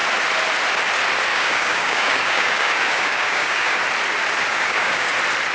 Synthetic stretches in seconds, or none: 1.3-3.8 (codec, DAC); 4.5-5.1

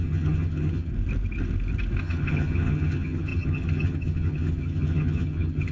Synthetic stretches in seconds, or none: 0.0-0.9 (vocoder, HiFi-GAN); 2.0-5.7

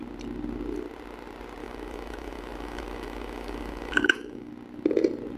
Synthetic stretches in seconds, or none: 1.6-4.5 (autoencoder, DAC-VAE)